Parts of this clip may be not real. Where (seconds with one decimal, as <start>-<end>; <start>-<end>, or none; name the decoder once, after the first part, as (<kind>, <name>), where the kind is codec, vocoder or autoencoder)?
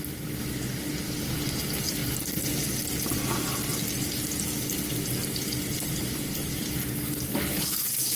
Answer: 7.5-8.2 (autoencoder, DAC-VAE)